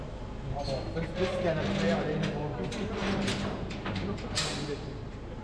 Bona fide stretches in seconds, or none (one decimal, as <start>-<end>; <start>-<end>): 0.0-3.0